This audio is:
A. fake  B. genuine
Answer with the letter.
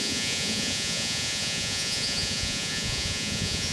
A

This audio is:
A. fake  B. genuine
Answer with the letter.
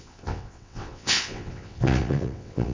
A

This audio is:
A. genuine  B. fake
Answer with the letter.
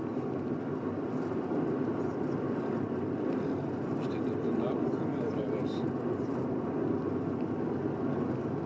A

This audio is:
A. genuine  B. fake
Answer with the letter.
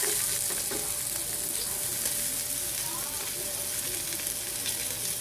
A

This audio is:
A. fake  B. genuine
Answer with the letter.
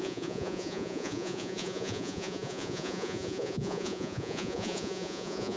A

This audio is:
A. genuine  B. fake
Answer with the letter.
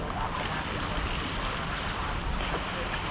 A